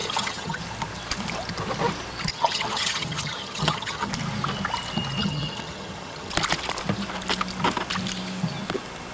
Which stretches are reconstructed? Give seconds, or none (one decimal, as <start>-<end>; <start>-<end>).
0.0-0.6; 2.3-4.1; 5.2-6.3